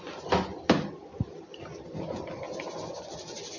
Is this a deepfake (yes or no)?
no